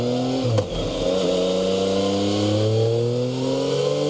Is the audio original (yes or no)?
yes